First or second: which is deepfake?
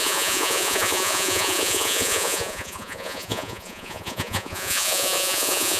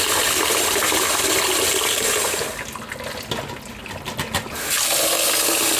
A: first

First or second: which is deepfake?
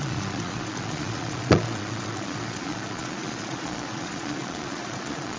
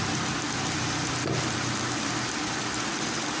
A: first